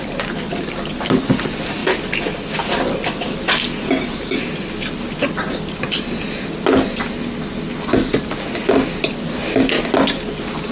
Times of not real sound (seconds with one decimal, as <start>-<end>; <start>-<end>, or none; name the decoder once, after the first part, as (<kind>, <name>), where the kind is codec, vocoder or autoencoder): none